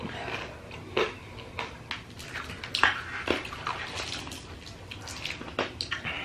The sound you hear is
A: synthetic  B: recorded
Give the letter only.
B